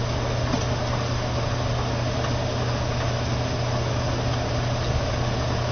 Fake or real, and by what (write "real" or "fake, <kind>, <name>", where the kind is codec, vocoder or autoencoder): real